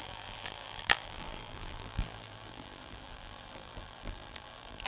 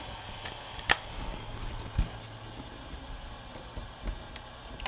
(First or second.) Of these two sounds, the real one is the second